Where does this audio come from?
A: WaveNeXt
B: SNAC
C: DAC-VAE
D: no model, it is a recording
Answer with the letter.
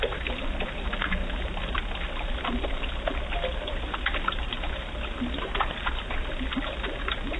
D